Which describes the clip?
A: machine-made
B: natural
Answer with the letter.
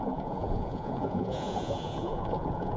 A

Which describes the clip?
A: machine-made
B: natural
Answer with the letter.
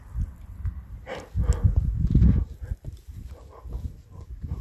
B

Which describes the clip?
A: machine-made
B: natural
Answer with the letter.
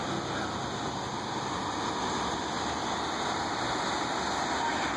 B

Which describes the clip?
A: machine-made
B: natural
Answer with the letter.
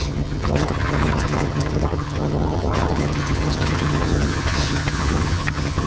A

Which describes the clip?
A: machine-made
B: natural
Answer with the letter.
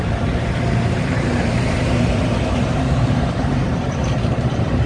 A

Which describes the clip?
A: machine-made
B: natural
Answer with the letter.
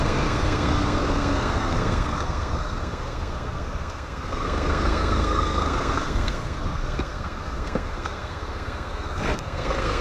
A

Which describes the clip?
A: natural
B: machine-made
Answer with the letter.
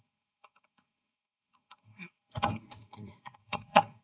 B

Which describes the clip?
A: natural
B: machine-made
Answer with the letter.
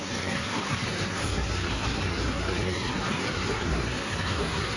B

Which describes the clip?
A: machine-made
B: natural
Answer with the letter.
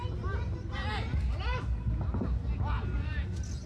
B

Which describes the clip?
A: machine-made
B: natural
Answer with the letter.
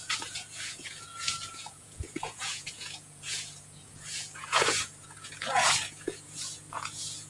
A